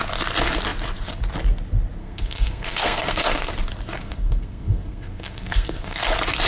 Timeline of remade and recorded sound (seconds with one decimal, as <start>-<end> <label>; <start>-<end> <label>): 0.0-2.0 recorded; 2.0-3.5 remade; 3.5-4.0 recorded; 4.0-6.0 remade; 6.0-6.5 recorded